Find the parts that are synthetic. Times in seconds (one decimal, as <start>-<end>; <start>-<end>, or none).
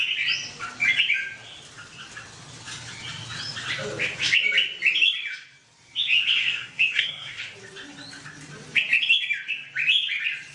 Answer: 6.3-7.4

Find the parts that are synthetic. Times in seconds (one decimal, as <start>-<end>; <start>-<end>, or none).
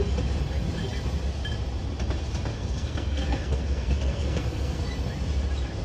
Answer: 2.5-4.8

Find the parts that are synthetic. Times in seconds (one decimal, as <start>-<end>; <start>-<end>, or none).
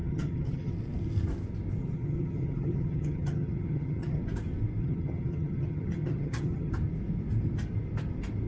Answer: 0.0-0.7; 1.8-4.2; 4.8-6.7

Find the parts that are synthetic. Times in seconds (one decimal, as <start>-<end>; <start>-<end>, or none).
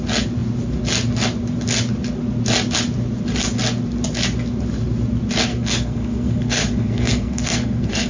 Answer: 5.5-8.1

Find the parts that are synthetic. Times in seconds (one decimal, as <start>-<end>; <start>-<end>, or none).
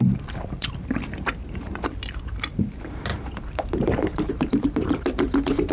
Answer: 0.0-5.7